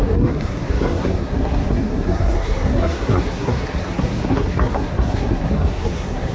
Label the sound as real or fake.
fake